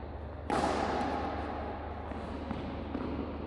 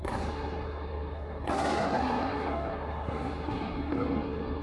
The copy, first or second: second